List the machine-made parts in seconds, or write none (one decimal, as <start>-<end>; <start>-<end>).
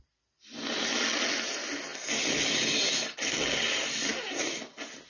none